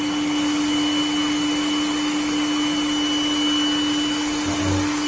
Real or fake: real